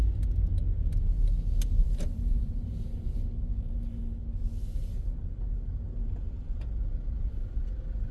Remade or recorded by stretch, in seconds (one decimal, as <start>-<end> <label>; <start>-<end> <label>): 0.0-1.8 recorded; 1.8-3.3 remade; 3.3-8.1 recorded